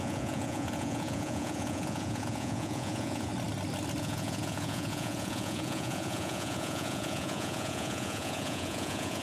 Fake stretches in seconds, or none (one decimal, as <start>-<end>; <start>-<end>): 0.0-3.3; 4.0-9.2